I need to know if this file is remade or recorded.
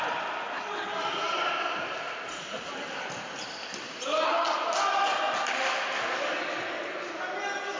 recorded